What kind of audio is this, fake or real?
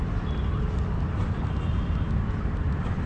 real